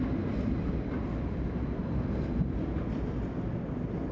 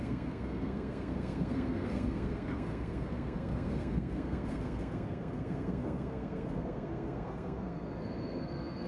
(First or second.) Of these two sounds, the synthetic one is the second